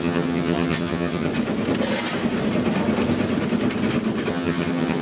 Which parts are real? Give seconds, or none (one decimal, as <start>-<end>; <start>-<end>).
1.3-4.3